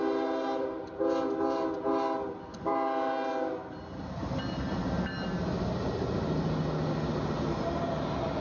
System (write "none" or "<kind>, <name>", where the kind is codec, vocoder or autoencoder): none